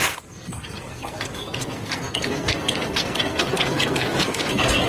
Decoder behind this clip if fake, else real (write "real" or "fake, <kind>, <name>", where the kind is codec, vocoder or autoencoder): fake, codec, SNAC